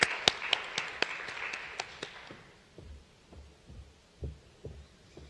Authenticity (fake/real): real